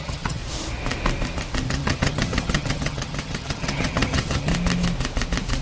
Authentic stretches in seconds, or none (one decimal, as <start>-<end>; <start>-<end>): 0.4-1.7; 4.5-5.6